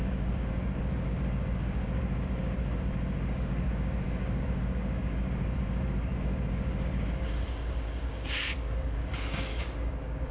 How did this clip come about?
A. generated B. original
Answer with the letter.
A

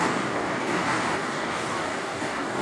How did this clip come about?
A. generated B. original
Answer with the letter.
A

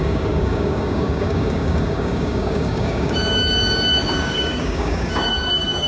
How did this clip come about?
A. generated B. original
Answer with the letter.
A